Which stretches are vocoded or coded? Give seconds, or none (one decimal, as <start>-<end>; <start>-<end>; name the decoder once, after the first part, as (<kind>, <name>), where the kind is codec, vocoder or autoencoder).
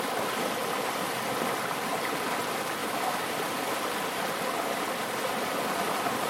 2.8-3.3 (autoencoder, DAC-VAE)